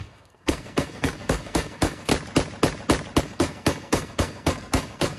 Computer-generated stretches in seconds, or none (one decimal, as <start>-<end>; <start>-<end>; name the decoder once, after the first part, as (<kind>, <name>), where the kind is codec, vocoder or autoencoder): 0.0-2.1 (codec, SNAC); 3.2-5.2